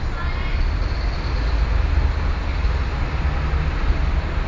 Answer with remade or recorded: recorded